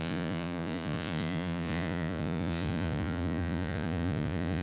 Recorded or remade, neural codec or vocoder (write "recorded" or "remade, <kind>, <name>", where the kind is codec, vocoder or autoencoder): remade, vocoder, Vocos